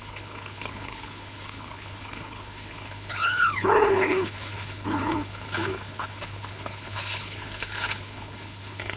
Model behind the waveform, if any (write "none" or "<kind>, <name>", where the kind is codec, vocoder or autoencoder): codec, HILCodec